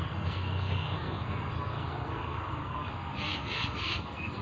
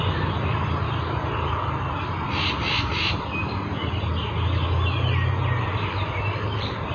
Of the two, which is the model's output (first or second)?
first